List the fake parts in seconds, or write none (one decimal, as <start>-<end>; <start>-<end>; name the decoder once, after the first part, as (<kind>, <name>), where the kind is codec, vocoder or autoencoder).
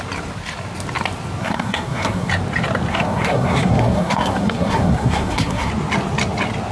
1.4-2.3 (codec, SNAC); 2.9-5.7